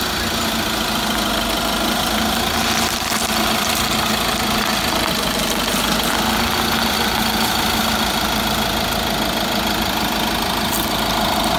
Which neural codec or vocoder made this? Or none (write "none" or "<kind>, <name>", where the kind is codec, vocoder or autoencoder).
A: none